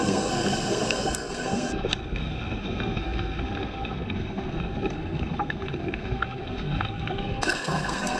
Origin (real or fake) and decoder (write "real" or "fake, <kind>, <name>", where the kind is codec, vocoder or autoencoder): fake, codec, SNAC